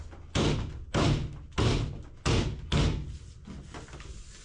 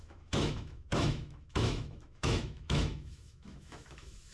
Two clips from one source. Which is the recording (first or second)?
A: first